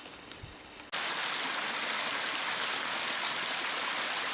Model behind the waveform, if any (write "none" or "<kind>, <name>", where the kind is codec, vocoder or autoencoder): none